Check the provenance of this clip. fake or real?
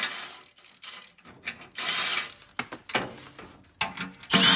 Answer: real